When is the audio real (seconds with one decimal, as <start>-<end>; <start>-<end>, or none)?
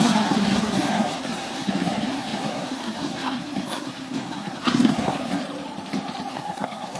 5.4-6.3